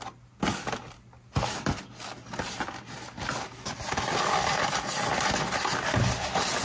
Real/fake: real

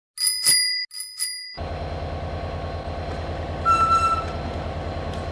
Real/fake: real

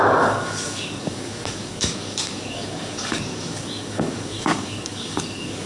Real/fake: fake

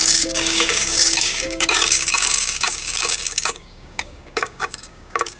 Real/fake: fake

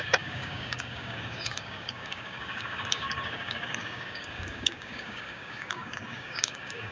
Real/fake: fake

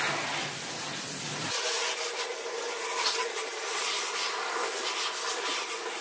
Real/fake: real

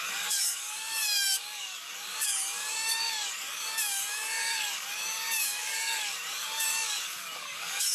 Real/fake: fake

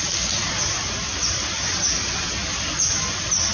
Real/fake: real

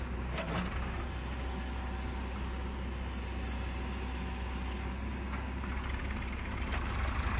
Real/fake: real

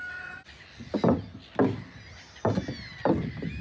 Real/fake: real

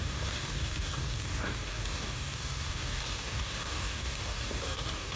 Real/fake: fake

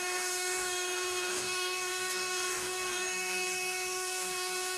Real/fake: fake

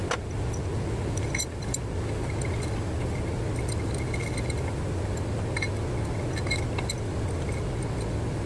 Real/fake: real